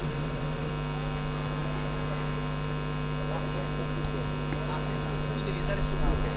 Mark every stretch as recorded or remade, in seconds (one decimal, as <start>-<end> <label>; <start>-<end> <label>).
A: 0.0-0.7 remade; 0.7-6.4 recorded